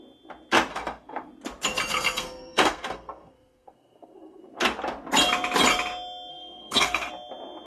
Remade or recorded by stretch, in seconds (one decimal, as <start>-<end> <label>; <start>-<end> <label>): 0.0-0.7 recorded; 0.7-1.3 remade; 1.3-1.9 recorded; 1.9-4.4 remade; 4.4-6.3 recorded; 6.3-7.1 remade; 7.1-7.7 recorded

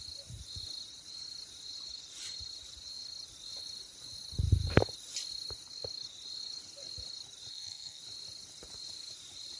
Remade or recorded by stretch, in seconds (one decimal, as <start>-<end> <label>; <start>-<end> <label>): 0.0-7.5 recorded; 7.5-8.0 remade; 8.0-9.6 recorded

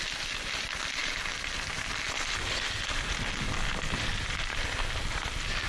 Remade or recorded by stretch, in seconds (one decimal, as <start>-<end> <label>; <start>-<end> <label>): 0.0-5.7 recorded